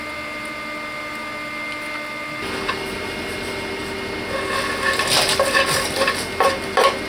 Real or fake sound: real